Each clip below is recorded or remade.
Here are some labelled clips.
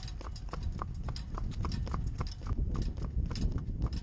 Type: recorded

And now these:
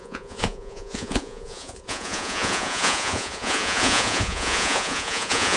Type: remade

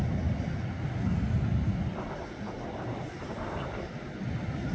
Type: recorded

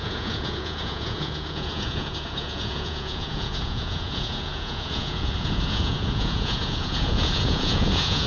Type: remade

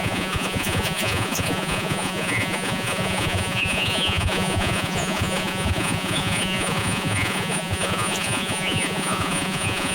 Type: remade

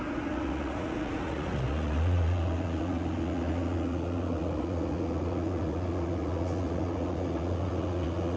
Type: remade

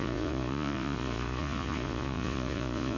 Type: remade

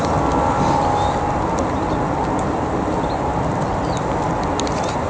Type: recorded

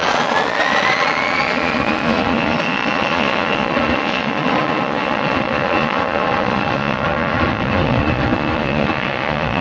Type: remade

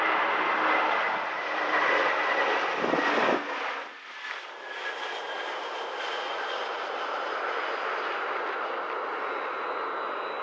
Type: recorded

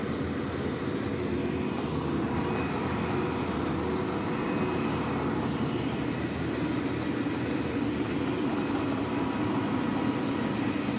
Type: recorded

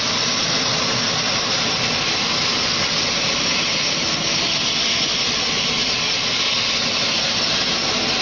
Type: recorded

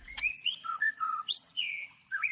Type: remade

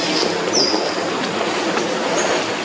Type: recorded